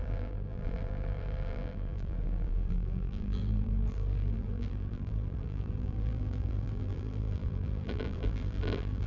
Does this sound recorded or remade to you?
remade